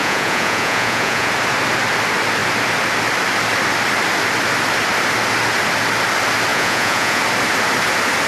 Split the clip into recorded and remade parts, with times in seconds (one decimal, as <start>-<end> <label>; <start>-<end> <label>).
0.0-1.3 remade; 1.3-6.5 recorded; 6.5-7.2 remade; 7.2-8.3 recorded